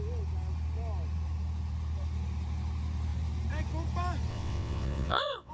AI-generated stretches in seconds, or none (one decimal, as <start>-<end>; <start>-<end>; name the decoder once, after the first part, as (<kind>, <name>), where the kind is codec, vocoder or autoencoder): 4.3-5.5 (vocoder, WaveNeXt)